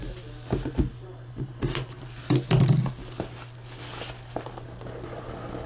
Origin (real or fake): real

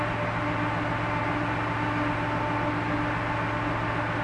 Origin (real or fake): real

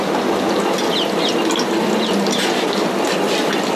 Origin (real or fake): real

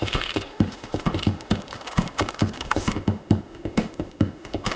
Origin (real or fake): fake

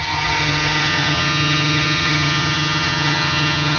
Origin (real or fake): fake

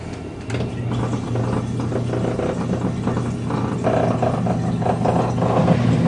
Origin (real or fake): real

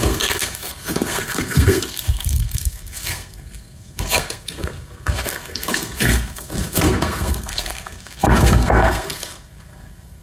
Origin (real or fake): fake